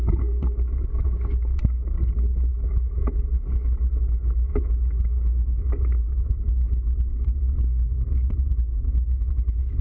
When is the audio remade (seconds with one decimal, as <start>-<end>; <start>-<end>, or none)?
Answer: 2.5-3.1; 4.2-9.3